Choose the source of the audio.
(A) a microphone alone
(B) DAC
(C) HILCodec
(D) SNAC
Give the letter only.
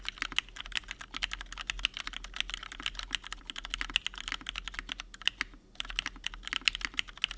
A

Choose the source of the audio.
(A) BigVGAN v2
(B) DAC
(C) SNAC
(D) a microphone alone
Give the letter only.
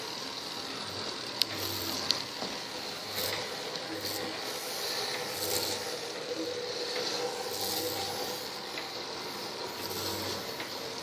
D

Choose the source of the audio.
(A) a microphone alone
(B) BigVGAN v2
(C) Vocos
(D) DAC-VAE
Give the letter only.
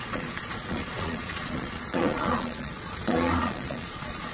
C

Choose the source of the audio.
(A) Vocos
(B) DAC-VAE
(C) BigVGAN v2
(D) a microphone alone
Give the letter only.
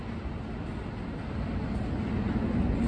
D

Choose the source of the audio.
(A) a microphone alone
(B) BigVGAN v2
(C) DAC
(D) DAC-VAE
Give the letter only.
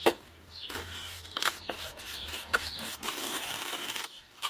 C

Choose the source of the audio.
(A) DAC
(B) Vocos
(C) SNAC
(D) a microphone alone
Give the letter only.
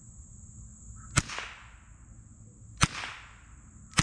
D